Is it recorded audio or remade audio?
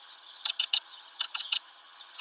remade